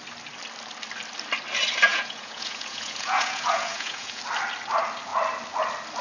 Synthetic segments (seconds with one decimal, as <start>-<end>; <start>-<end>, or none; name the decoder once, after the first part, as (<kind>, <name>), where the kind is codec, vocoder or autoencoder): 1.9-4.2 (vocoder, Vocos)